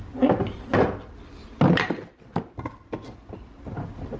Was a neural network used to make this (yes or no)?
no